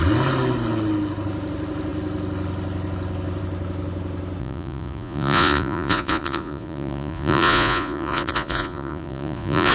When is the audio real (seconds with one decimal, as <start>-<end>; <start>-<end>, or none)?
0.0-4.4